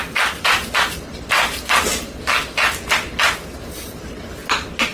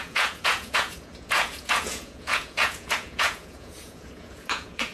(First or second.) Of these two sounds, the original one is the first